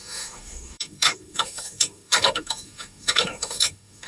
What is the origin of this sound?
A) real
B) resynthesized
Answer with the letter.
B